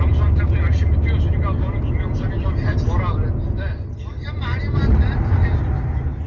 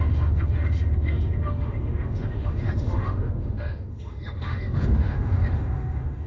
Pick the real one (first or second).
first